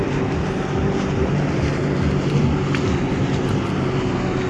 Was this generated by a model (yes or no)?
no